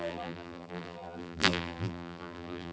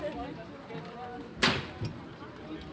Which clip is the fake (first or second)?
first